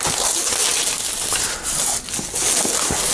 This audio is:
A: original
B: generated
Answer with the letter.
A